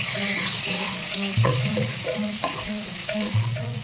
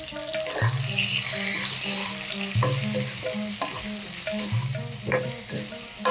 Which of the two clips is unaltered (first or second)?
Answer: second